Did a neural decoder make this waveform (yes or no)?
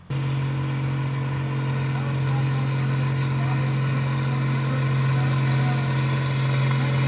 no